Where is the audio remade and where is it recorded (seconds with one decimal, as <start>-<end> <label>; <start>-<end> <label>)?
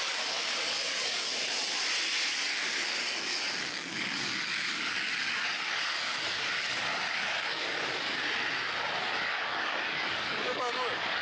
0.0-1.3 remade; 1.3-2.3 recorded; 2.3-8.2 remade; 8.2-9.0 recorded; 9.0-11.2 remade